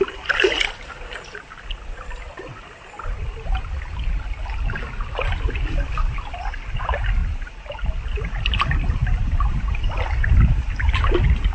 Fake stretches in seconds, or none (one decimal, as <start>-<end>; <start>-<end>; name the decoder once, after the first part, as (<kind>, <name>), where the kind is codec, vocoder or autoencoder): 7.2-7.9 (vocoder, BigVGAN v2)